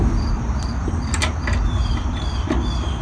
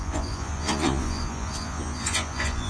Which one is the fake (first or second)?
second